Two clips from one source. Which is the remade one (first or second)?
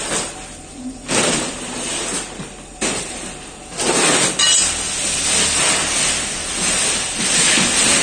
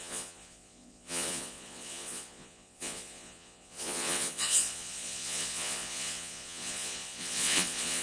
second